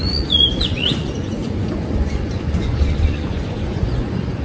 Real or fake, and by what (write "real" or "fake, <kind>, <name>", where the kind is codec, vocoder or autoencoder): fake, vocoder, Vocos